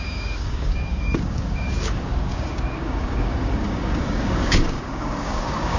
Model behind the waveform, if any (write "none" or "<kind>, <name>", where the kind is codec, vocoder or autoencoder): codec, DAC